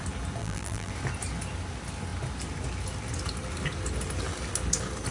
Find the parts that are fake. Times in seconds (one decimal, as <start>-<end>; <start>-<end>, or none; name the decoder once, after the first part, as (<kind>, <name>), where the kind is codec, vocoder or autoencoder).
0.4-0.9 (vocoder, BigVGAN v2)